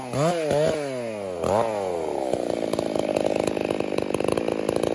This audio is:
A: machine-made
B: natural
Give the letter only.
B